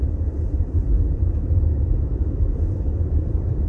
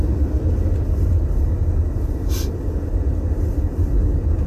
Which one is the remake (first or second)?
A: first